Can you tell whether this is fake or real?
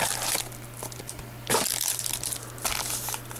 real